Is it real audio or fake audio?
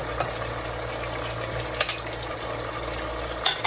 real